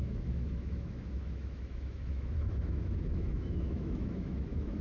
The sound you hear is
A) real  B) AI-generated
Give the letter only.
B